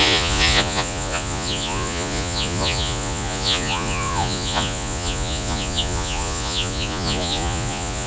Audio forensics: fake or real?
fake